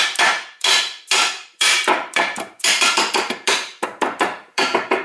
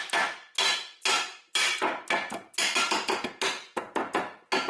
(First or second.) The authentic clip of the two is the second